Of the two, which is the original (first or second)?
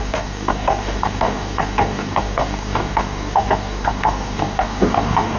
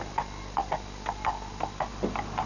second